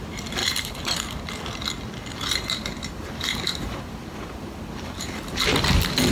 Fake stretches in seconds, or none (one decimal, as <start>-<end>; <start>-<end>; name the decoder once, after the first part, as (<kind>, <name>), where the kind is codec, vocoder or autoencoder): 0.4-1.2 (vocoder, BigVGAN v2); 2.1-5.4